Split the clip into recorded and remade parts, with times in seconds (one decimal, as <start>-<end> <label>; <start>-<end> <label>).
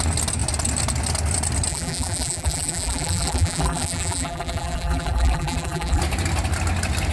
0.0-1.7 recorded; 1.7-6.0 remade; 6.0-7.1 recorded